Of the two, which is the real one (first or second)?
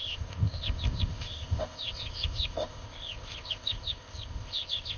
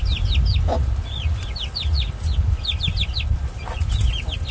second